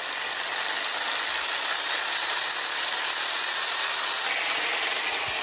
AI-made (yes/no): no